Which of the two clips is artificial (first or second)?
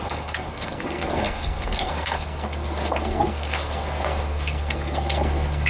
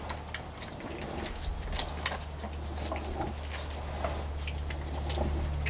first